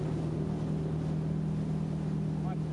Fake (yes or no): no